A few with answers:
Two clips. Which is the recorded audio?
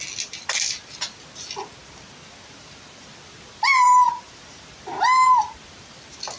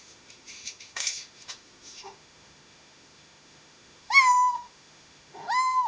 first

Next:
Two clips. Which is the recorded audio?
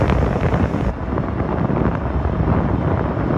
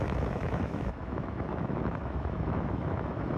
first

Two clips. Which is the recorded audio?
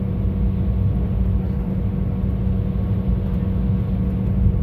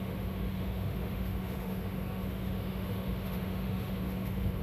first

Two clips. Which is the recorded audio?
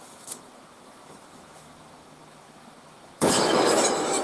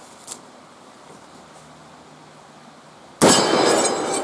second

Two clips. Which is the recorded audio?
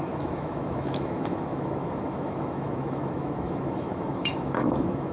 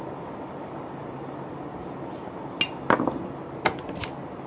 second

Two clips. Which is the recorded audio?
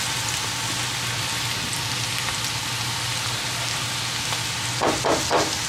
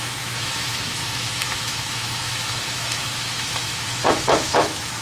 first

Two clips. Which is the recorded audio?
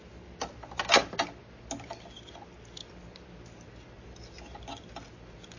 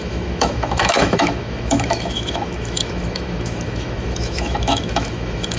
first